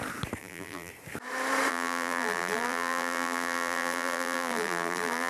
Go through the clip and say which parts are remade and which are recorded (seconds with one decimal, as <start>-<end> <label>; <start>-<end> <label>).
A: 0.0-0.4 recorded; 0.4-0.9 remade; 0.9-1.7 recorded; 1.7-5.3 remade